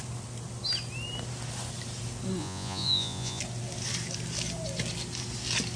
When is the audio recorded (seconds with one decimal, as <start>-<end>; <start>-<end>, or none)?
0.0-2.4; 3.4-5.8